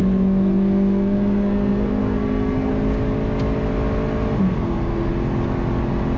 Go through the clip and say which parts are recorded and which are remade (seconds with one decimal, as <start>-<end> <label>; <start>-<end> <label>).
0.0-2.7 remade; 2.7-4.4 recorded; 4.4-5.1 remade; 5.1-6.2 recorded